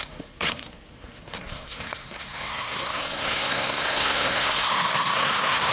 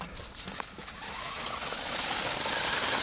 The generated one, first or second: first